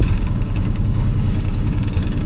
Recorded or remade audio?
remade